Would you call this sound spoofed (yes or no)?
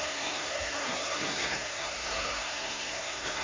yes